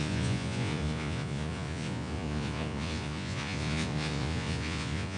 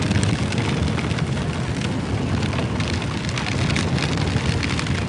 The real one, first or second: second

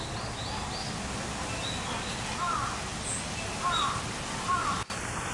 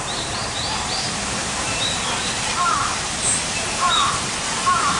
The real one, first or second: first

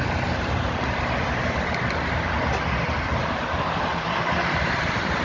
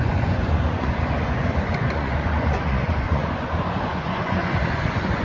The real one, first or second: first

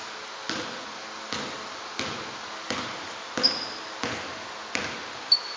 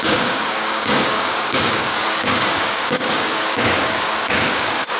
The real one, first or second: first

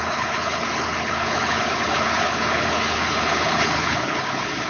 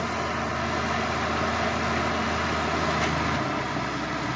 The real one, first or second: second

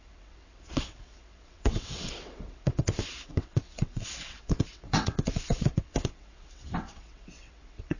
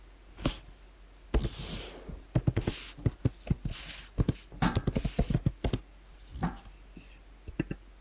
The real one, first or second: second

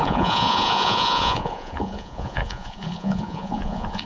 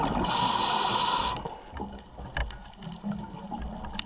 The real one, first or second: second